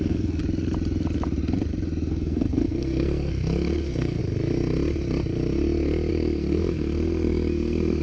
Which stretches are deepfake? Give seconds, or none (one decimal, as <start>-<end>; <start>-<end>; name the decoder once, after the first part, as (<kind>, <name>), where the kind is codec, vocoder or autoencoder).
0.0-0.4 (codec, SNAC); 2.1-4.2; 6.1-8.0